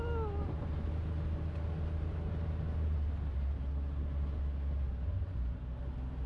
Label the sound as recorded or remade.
recorded